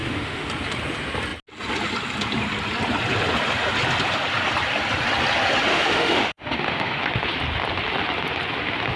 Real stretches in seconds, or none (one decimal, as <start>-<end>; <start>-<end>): 0.5-5.7; 7.0-9.0